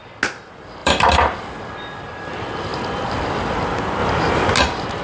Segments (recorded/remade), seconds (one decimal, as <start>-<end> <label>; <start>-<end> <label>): 0.0-0.8 recorded; 0.8-1.6 remade; 1.6-2.7 recorded; 2.7-3.2 remade; 3.2-5.0 recorded